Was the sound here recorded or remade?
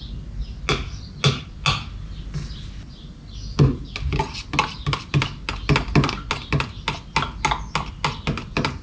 recorded